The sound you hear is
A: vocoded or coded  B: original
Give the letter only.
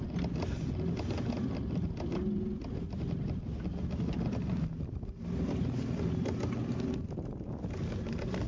B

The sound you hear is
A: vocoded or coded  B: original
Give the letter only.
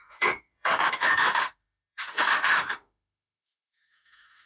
A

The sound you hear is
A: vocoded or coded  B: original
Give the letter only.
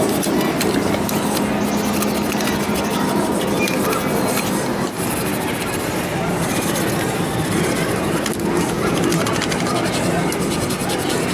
B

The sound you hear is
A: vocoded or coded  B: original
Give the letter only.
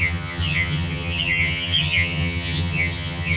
A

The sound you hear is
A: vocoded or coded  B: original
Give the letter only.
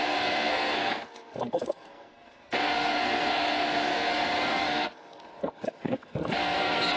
A